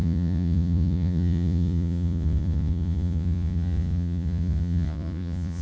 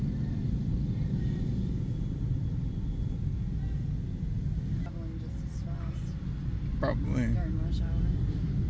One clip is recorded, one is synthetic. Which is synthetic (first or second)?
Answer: first